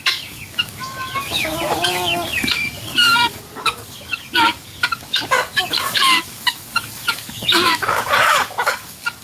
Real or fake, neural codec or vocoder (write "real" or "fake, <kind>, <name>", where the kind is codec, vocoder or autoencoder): fake, codec, DAC